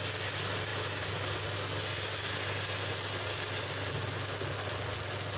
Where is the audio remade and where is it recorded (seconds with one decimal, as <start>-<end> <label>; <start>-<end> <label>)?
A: 0.0-5.4 recorded